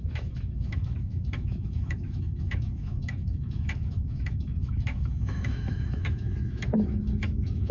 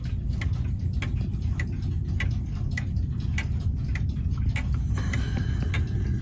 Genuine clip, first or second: second